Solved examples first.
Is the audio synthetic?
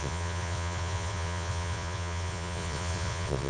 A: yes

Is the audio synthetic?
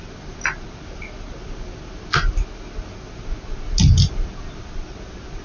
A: no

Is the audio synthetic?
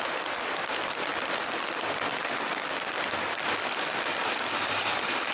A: yes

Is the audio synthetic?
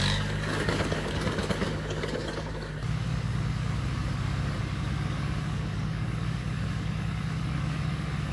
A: yes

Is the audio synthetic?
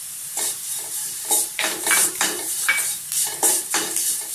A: yes